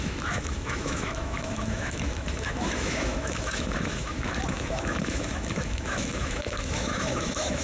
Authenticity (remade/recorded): remade